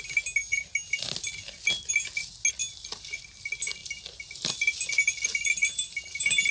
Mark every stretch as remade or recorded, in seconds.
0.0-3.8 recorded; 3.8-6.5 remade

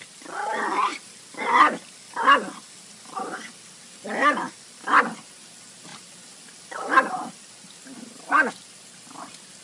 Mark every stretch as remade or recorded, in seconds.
0.0-9.6 recorded

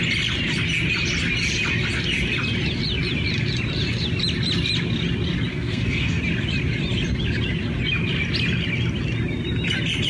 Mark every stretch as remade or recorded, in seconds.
0.0-5.5 recorded; 5.5-6.2 remade; 6.2-10.1 recorded

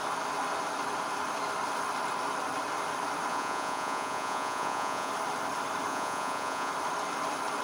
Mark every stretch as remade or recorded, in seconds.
0.0-3.3 recorded; 3.3-5.1 remade; 5.1-5.9 recorded; 5.9-6.7 remade; 6.7-7.6 recorded

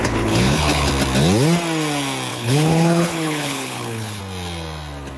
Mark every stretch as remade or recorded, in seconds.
0.0-0.9 remade; 0.9-2.3 recorded; 2.3-4.2 remade; 4.2-5.2 recorded

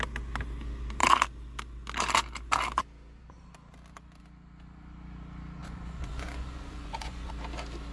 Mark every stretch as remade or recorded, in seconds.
0.0-5.6 recorded; 5.6-7.3 remade; 7.3-7.9 recorded

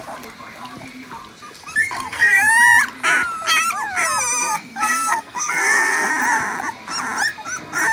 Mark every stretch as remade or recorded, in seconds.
0.0-1.8 recorded; 1.8-2.5 remade; 2.5-4.4 recorded; 4.4-6.1 remade; 6.1-7.9 recorded

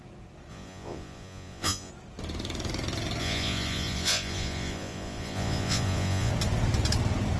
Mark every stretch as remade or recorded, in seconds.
0.0-0.5 recorded; 0.5-1.9 remade; 1.9-3.2 recorded; 3.2-6.3 remade; 6.3-7.4 recorded